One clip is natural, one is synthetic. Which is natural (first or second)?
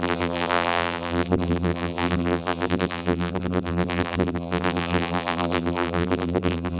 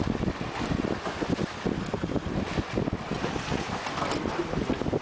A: second